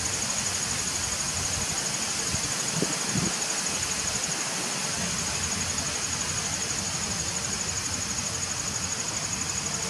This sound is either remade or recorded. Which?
recorded